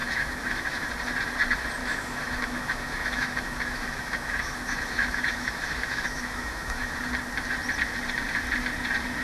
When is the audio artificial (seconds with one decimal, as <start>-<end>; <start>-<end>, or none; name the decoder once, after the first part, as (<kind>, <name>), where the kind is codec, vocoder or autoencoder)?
0.0-0.9 (autoencoder, DAC-VAE); 1.8-6.9